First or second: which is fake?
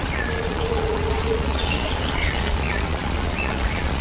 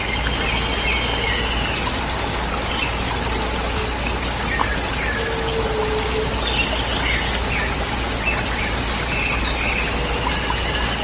first